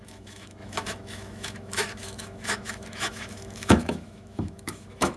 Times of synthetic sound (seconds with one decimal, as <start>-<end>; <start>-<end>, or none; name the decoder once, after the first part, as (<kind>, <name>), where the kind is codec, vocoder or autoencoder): 0.0-5.2 (autoencoder, DAC-VAE)